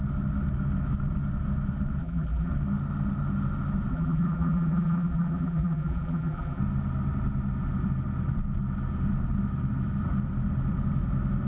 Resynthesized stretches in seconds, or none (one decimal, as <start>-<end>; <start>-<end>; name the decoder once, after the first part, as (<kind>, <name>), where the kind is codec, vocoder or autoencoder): 2.0-2.5 (vocoder, BigVGAN v2); 3.9-6.6